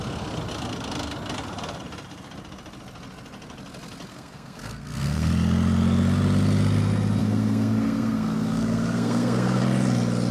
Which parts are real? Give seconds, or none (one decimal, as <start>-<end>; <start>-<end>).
0.0-4.1; 5.3-7.2; 9.6-10.3

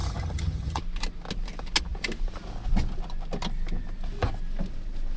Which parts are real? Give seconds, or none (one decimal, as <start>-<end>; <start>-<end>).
0.8-5.2